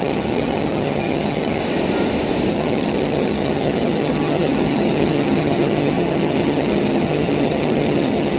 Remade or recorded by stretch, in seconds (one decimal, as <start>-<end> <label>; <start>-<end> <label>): 0.0-1.6 remade; 1.6-2.5 recorded; 2.5-8.4 remade